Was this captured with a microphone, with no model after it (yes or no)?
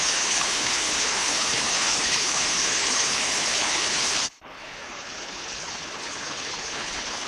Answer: no